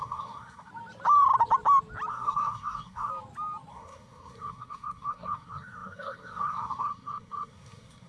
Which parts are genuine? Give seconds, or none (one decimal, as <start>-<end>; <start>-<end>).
0.7-2.1; 3.1-3.7